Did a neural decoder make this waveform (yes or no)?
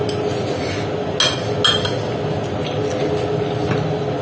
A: no